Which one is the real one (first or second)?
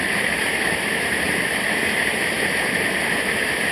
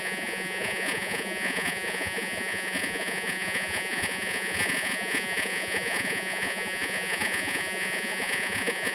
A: first